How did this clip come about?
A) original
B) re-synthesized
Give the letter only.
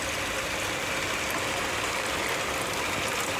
A